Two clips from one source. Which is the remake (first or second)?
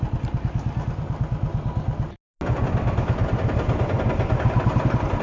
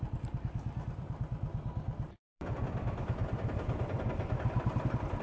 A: second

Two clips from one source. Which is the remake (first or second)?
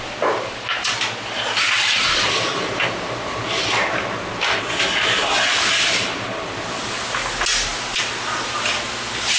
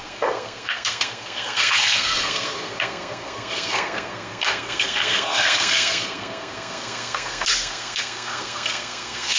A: second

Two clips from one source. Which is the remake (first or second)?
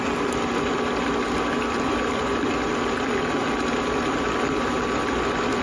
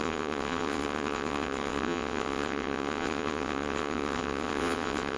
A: second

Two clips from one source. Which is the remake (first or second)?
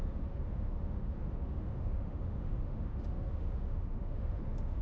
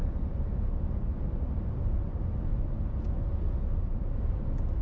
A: first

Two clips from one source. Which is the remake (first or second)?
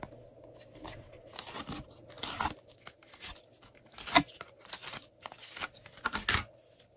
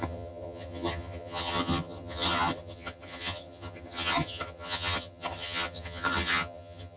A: second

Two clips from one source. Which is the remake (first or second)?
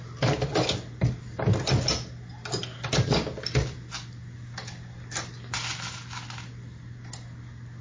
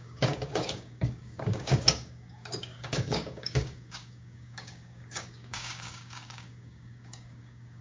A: second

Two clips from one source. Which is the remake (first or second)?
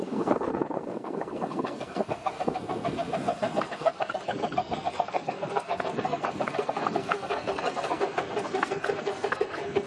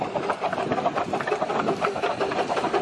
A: first